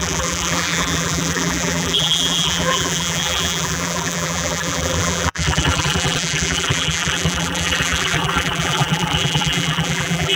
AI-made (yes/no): yes